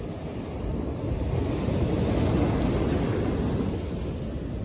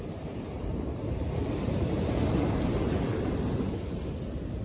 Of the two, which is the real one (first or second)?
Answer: first